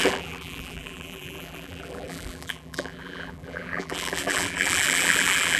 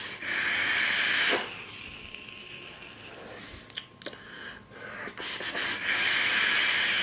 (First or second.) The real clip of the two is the second